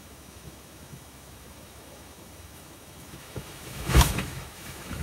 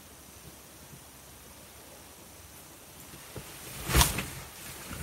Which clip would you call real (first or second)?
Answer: second